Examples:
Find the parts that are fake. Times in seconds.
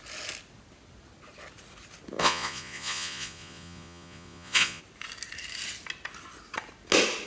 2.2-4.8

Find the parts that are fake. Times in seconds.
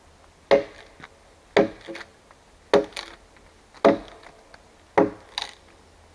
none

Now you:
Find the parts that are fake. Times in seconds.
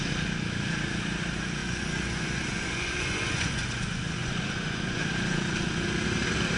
1.6-5.0